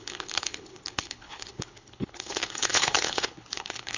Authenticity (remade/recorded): remade